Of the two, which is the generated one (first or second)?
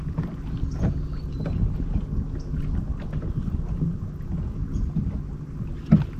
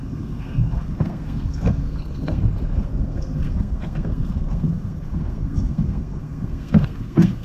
second